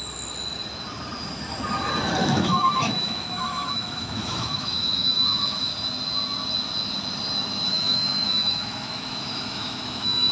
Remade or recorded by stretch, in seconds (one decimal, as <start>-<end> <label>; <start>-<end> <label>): 0.0-2.2 recorded; 2.2-5.7 remade; 5.7-7.7 recorded; 7.7-10.3 remade